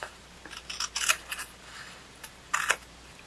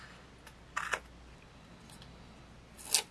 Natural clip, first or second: second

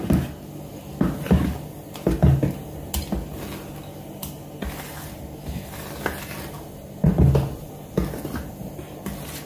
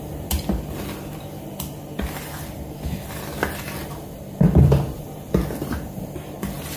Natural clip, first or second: first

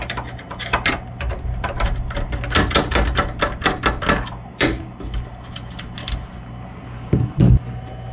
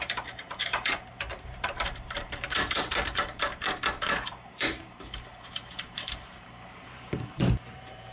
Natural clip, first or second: first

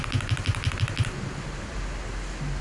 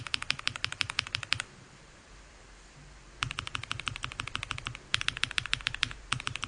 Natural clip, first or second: first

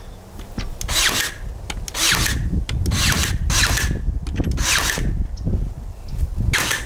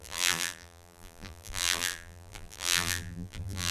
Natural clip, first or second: first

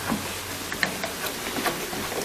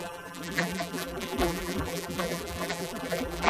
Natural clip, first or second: first